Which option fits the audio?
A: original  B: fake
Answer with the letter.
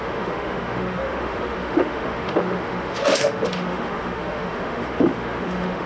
B